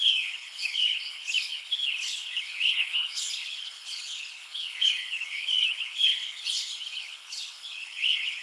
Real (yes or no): no